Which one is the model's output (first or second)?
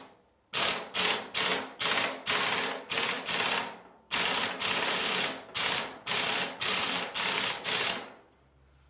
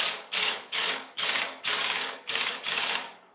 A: second